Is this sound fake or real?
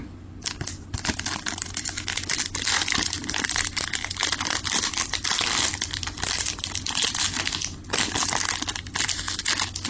real